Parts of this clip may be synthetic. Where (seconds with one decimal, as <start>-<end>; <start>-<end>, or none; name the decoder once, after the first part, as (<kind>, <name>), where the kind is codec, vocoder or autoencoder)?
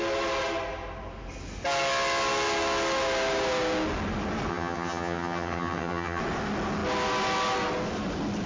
4.5-6.2 (vocoder, HiFi-GAN)